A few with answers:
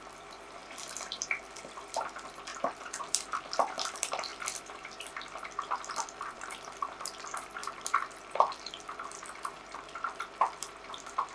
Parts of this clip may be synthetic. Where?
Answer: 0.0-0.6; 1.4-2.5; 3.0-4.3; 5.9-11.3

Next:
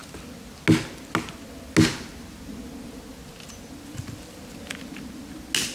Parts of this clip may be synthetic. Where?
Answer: none

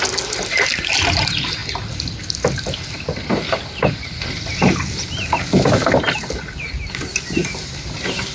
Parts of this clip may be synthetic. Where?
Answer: 1.6-6.3; 7.4-8.3